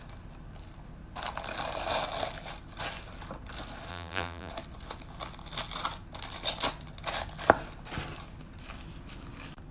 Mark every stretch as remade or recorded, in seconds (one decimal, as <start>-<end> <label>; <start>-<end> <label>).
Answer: 0.0-3.9 recorded; 3.9-4.5 remade; 4.5-9.7 recorded